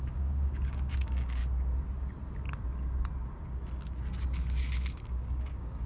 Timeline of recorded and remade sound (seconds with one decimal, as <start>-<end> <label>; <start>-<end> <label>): 0.0-1.4 remade; 1.4-4.9 recorded; 4.9-5.9 remade